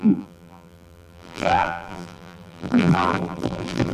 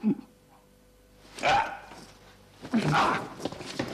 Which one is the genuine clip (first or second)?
second